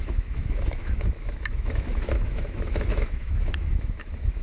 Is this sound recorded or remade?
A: remade